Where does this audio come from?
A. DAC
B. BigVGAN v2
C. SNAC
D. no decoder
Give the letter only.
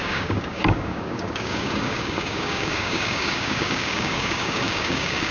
A